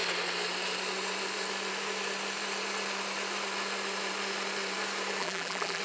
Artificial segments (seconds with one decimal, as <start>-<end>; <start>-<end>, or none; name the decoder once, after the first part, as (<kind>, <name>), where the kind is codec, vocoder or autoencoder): 5.2-5.8 (vocoder, BigVGAN v2)